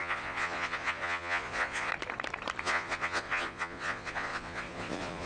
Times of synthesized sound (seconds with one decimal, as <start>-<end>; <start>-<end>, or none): 0.0-1.9; 2.6-5.3